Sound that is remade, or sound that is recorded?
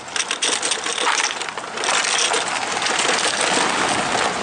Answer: recorded